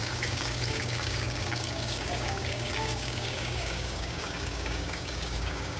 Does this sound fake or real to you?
fake